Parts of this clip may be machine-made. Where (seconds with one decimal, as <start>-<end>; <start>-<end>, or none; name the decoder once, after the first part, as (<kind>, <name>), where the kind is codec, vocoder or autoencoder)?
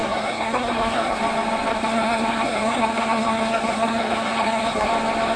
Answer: 0.0-1.2 (codec, SNAC); 1.7-4.9